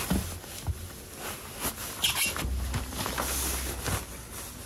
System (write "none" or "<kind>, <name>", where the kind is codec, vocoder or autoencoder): none